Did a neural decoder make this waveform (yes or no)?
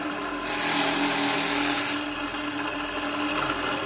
no